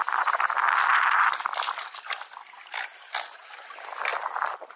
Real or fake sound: real